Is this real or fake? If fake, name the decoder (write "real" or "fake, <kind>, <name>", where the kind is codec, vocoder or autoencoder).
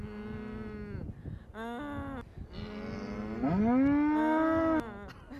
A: real